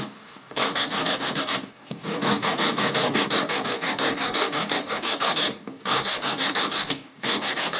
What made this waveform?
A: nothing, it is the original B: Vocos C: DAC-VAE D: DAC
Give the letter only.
D